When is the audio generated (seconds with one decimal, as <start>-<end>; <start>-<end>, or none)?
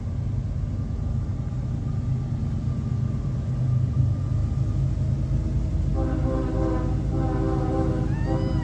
1.3-2.3